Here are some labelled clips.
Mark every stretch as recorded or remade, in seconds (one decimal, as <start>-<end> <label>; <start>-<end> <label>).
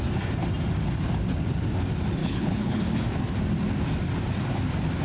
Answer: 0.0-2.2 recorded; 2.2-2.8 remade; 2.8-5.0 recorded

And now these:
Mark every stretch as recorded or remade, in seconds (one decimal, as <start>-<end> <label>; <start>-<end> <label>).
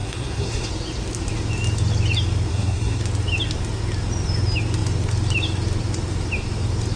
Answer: 0.0-0.7 remade; 0.7-2.5 recorded; 2.5-3.0 remade; 3.0-7.0 recorded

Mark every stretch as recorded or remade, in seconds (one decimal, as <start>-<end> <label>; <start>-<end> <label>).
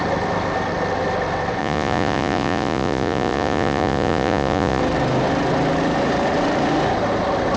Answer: 0.0-1.6 recorded; 1.6-4.8 remade; 4.8-7.6 recorded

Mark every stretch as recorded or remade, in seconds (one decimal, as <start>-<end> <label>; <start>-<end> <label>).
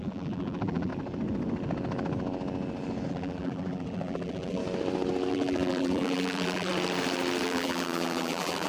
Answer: 0.0-0.9 remade; 0.9-3.1 recorded; 3.1-4.6 remade; 4.6-5.3 recorded; 5.3-6.7 remade; 6.7-7.4 recorded; 7.4-8.7 remade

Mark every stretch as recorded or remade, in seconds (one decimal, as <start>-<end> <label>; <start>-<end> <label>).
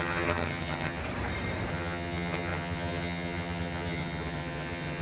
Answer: 0.0-1.0 remade; 1.0-1.7 recorded; 1.7-5.0 remade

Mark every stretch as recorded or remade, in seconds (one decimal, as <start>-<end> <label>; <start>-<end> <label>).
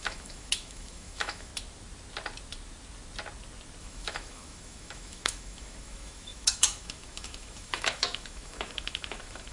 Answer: 0.0-1.5 remade; 1.5-3.8 recorded; 3.8-9.5 remade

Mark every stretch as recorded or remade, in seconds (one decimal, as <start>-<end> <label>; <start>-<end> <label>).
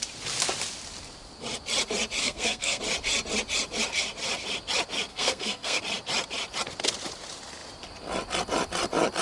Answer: 0.0-2.2 recorded; 2.2-2.8 remade; 2.8-5.1 recorded; 5.1-5.8 remade; 5.8-9.2 recorded